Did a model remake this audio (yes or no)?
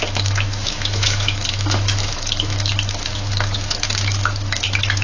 yes